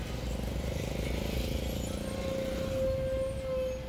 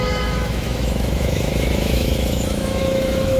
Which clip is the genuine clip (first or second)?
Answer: first